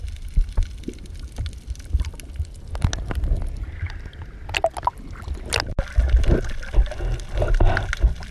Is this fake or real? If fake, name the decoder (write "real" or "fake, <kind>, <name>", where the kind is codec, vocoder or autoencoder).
real